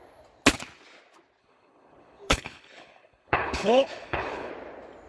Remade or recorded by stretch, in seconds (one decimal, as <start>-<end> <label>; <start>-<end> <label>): 0.0-1.4 recorded; 1.4-4.5 remade; 4.5-5.1 recorded